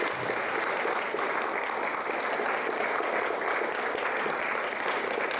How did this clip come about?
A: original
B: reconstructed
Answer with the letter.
A